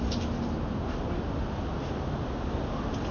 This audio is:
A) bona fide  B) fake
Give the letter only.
A